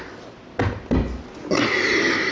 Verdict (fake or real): real